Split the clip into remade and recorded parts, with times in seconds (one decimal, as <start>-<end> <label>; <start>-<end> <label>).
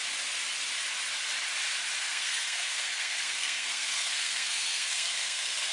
0.0-2.0 recorded; 2.0-5.7 remade